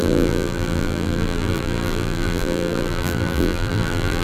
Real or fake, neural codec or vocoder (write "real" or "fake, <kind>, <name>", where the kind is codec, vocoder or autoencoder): fake, vocoder, BigVGAN v2